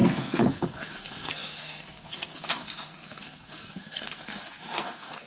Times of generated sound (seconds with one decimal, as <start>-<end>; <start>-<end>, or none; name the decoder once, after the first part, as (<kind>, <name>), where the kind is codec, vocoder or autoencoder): 0.0-5.3 (codec, SNAC)